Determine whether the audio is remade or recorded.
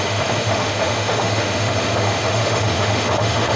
remade